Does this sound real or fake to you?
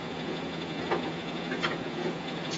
fake